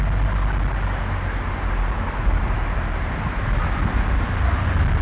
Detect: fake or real real